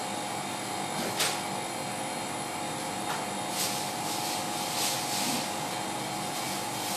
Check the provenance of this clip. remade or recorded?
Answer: recorded